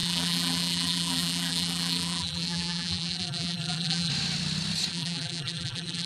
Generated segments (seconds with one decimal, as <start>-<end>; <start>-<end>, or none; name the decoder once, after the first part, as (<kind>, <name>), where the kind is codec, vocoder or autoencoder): 0.0-4.1 (vocoder, BigVGAN v2); 4.9-6.1